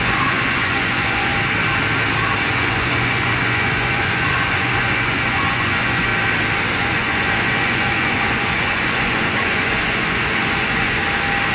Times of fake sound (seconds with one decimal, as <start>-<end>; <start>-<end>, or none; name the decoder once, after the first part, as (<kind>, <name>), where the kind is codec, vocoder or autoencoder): 0.0-1.3 (vocoder, Vocos); 2.4-6.1; 6.7-11.0